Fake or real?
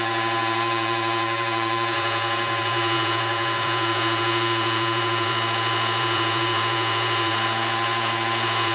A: fake